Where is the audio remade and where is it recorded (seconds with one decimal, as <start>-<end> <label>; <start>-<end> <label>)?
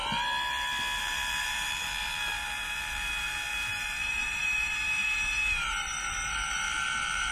0.0-1.0 recorded; 1.0-7.3 remade